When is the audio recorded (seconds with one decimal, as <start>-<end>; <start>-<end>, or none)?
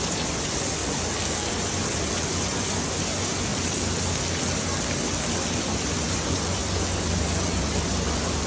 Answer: 0.8-1.5; 3.5-5.6